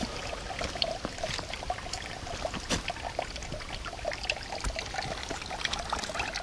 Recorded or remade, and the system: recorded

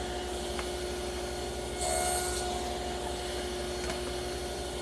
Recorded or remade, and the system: recorded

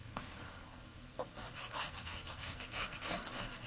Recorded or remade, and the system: remade, codec, SNAC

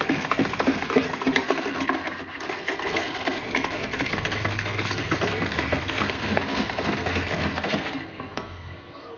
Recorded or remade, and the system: remade, codec, SNAC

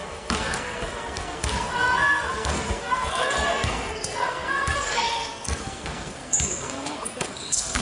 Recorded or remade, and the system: remade, codec, SNAC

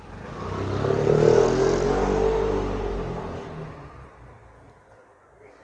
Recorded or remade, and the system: recorded